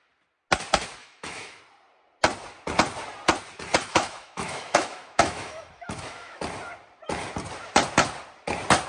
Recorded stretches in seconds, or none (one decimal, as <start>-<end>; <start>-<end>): 0.0-1.0; 1.6-3.9; 6.4-8.9